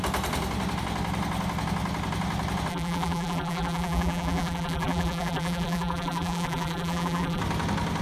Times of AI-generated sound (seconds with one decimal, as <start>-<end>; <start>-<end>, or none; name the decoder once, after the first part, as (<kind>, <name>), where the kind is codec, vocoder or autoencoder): 2.7-7.4 (vocoder, BigVGAN v2)